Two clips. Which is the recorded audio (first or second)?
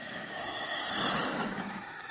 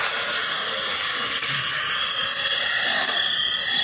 second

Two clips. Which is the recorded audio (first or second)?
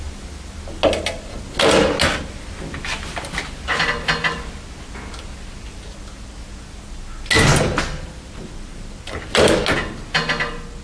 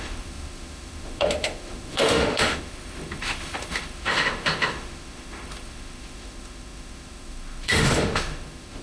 first